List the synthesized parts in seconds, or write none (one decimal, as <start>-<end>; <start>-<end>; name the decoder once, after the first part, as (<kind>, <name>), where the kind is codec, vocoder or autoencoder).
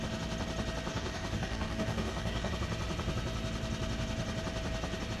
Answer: 0.9-2.5 (codec, DAC)